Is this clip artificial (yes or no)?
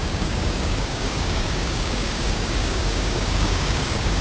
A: yes